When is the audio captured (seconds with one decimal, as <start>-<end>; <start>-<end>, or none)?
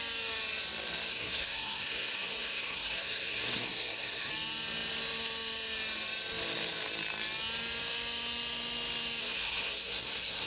0.0-1.1; 4.3-9.2